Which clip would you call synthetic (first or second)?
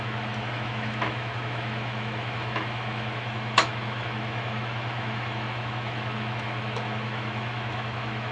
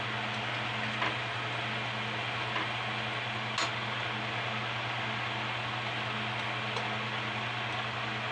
first